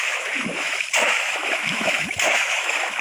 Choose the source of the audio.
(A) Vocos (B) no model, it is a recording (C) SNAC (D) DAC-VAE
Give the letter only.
D